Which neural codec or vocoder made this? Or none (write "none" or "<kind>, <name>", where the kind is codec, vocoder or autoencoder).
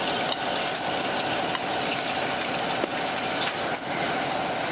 none